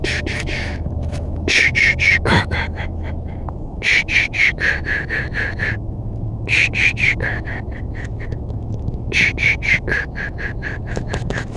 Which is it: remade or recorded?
remade